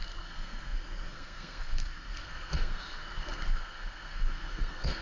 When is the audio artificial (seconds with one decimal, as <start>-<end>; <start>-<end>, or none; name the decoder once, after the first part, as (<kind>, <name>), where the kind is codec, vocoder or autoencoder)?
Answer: 0.0-5.0 (codec, SNAC)